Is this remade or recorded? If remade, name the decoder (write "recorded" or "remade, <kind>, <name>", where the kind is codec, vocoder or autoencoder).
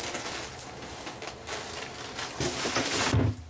recorded